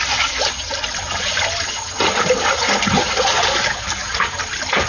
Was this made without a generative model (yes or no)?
yes